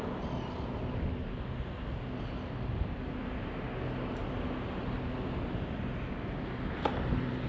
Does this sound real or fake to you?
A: real